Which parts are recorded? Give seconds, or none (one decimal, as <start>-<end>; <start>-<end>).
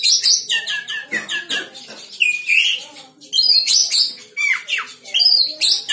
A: 0.0-5.9